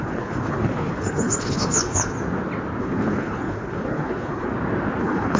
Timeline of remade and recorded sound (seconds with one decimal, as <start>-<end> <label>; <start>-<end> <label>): 0.0-2.1 remade; 2.1-2.8 recorded; 2.8-4.5 remade; 4.5-5.0 recorded; 5.0-5.4 remade